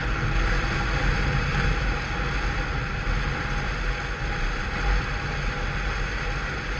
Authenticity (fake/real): real